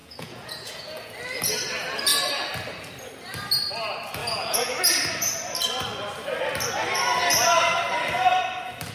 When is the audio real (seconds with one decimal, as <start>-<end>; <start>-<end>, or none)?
1.1-4.2; 4.8-8.9